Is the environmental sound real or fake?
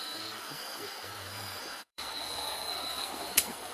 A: fake